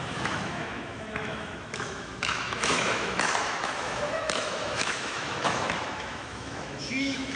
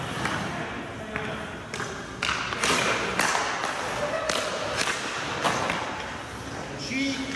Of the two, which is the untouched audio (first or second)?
second